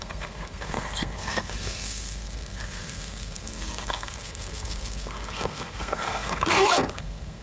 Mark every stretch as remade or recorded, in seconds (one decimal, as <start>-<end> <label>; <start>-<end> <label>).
0.0-7.4 remade